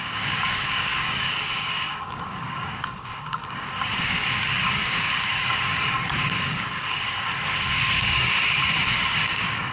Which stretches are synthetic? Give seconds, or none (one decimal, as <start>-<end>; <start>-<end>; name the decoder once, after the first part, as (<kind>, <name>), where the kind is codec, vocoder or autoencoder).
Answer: 0.0-9.7 (codec, DAC)